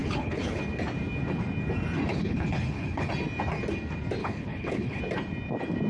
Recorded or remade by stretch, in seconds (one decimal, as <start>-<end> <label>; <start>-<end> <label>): 0.0-0.6 remade; 0.6-2.1 recorded; 2.1-3.1 remade; 3.1-4.2 recorded; 4.2-5.0 remade; 5.0-5.9 recorded